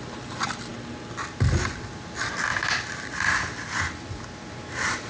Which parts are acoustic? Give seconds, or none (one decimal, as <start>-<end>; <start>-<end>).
0.0-2.5; 4.2-5.1